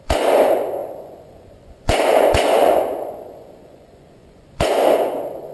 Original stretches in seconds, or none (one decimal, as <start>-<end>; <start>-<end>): none